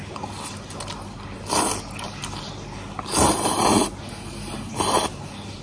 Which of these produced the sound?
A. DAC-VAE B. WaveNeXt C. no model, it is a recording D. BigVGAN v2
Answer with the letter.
C